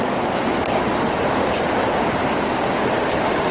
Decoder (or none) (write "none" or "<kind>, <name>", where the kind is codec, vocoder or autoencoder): none